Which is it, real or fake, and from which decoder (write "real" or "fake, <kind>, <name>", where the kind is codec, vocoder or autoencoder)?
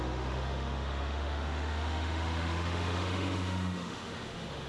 fake, autoencoder, DAC-VAE